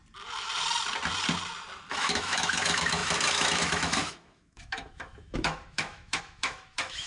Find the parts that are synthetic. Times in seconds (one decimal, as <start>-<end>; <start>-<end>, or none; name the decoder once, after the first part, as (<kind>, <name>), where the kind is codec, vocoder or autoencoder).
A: 1.9-7.1 (autoencoder, DAC-VAE)